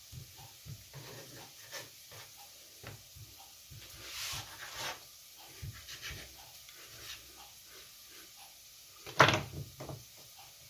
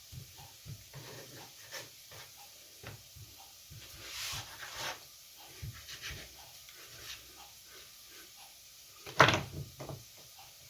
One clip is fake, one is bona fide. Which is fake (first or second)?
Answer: second